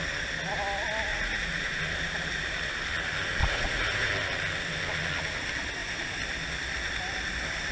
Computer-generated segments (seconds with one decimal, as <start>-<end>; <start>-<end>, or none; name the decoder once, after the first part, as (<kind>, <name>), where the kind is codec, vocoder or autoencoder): 1.1-1.8 (vocoder, Vocos); 3.4-4.1